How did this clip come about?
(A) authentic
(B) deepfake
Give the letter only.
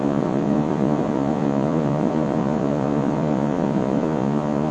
B